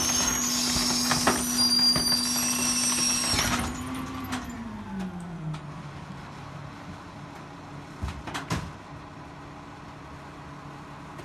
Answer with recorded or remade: recorded